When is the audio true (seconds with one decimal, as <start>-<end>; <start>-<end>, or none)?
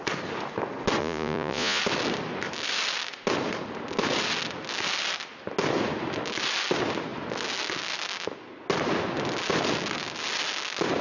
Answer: 0.0-1.0; 1.8-11.0